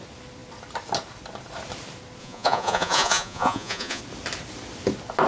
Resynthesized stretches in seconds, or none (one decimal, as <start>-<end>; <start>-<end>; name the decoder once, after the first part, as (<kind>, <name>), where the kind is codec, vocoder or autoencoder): 2.2-4.0 (vocoder, Vocos)